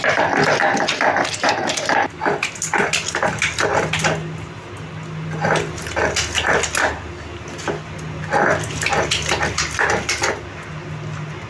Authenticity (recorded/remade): recorded